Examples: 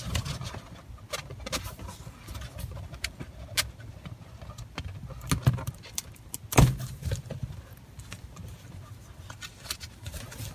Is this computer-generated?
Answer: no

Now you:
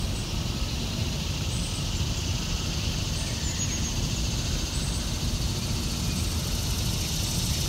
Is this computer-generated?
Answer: no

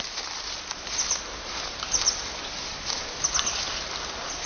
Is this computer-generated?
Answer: yes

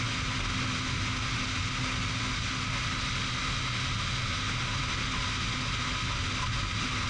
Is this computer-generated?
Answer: no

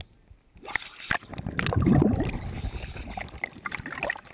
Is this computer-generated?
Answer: no